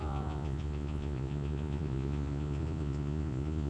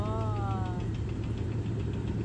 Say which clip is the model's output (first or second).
first